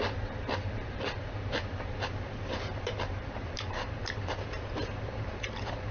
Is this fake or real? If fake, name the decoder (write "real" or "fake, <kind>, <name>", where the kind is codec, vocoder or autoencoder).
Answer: fake, vocoder, BigVGAN v2